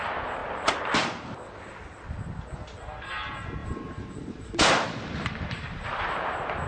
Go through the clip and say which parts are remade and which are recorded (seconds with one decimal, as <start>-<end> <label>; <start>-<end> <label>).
0.0-3.6 recorded; 3.6-6.7 remade